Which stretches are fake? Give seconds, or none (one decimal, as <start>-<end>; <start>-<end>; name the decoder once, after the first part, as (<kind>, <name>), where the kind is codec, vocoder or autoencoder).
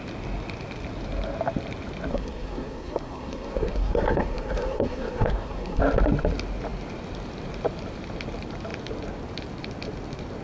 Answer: 2.1-5.8 (codec, SNAC)